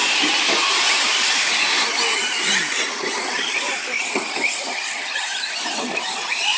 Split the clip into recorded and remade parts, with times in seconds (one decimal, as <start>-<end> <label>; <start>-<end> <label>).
0.0-6.6 recorded